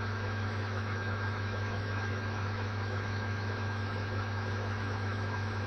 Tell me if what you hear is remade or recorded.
remade